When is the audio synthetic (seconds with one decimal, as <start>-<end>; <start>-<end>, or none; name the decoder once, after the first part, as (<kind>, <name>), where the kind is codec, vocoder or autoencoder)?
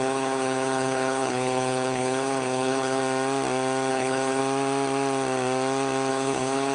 0.0-3.0 (codec, HILCodec); 3.9-4.4; 6.1-6.7